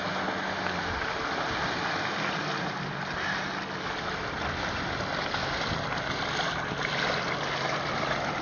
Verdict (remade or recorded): recorded